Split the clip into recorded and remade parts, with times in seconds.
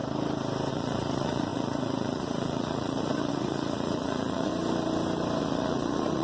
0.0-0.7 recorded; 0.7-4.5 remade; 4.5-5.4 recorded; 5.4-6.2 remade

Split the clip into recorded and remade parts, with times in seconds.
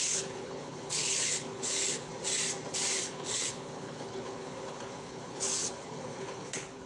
0.0-2.1 remade; 2.1-2.9 recorded; 2.9-6.9 remade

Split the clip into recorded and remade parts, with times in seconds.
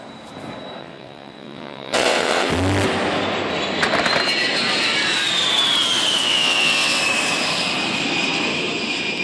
0.0-0.8 recorded; 0.8-2.5 remade; 2.5-6.2 recorded; 6.2-7.0 remade; 7.0-9.2 recorded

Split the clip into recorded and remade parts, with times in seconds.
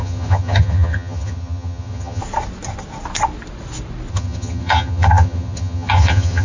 0.0-2.2 remade; 2.2-4.1 recorded; 4.1-6.4 remade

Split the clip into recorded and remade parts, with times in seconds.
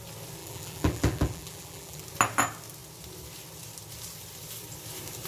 0.0-0.4 recorded; 0.4-2.0 remade; 2.0-5.3 recorded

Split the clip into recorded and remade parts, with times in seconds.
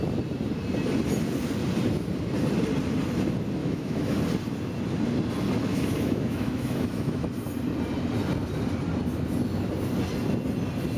0.0-3.6 recorded; 3.6-4.2 remade; 4.2-5.7 recorded; 5.7-7.3 remade; 7.3-11.0 recorded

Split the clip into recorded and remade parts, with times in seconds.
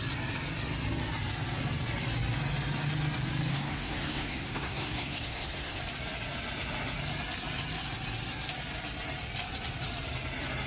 0.0-3.5 recorded; 3.5-5.8 remade; 5.8-10.7 recorded